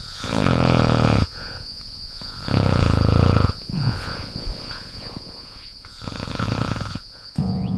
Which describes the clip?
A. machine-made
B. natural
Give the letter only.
A